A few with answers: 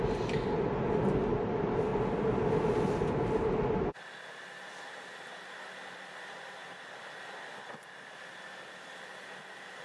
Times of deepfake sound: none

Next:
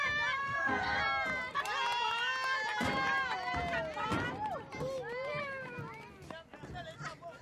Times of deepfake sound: 0.4-1.0 (codec, SNAC)

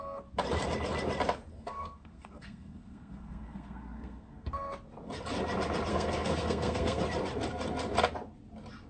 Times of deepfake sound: 1.5-4.5 (codec, SNAC); 5.9-7.0